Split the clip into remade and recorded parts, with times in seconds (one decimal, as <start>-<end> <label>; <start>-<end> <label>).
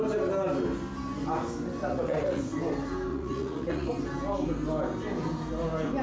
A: 0.0-1.8 recorded; 1.8-2.4 remade; 2.4-3.1 recorded; 3.1-3.9 remade; 3.9-6.0 recorded